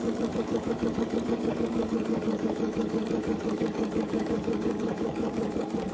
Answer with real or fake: fake